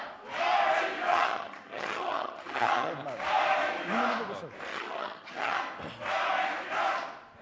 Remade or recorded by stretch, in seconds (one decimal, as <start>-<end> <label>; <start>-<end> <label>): 0.0-1.1 recorded; 1.1-2.9 remade; 2.9-4.7 recorded; 4.7-5.6 remade; 5.6-7.4 recorded